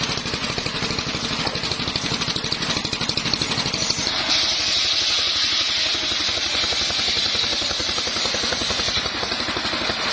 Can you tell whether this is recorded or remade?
recorded